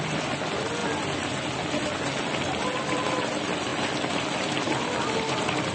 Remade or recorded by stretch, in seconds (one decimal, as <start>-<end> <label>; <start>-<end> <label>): 0.0-0.8 remade; 0.8-2.2 recorded; 2.2-5.7 remade